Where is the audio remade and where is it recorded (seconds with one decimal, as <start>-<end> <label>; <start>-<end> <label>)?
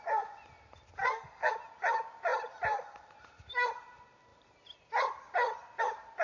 0.0-1.0 recorded; 1.0-1.5 remade; 1.5-6.2 recorded